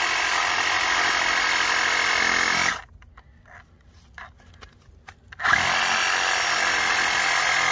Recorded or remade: recorded